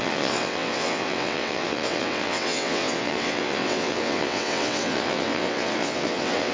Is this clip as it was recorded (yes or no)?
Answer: no